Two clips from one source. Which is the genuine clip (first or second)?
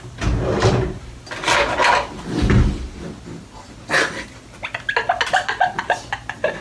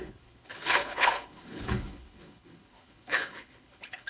first